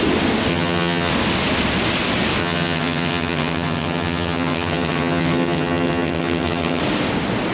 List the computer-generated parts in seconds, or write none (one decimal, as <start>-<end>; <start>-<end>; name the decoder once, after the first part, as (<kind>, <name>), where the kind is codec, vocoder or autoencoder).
0.5-1.1 (vocoder, HiFi-GAN); 2.4-6.8